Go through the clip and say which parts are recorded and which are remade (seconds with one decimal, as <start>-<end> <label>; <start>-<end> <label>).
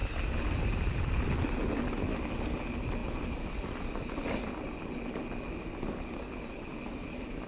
0.0-7.5 recorded